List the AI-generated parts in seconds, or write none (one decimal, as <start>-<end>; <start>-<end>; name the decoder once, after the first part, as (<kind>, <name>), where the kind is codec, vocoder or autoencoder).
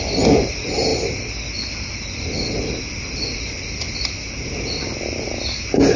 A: none